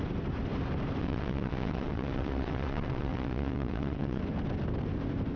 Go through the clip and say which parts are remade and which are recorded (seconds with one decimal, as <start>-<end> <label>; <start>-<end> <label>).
0.0-1.0 recorded; 1.0-4.2 remade; 4.2-5.4 recorded